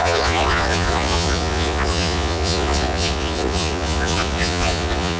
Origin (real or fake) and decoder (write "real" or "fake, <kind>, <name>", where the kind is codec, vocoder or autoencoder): fake, vocoder, Vocos